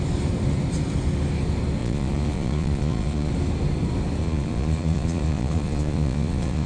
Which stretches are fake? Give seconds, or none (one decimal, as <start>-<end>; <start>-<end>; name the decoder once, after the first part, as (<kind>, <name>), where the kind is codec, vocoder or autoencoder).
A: 1.8-3.3 (vocoder, Vocos); 4.2-6.7